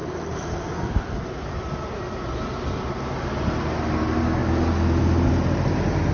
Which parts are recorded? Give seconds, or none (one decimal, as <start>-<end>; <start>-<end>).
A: 3.7-6.1